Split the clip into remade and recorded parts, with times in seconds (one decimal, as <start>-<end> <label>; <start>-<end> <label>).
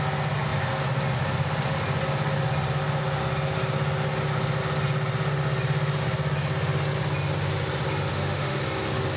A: 0.0-8.1 recorded; 8.1-8.6 remade; 8.6-9.2 recorded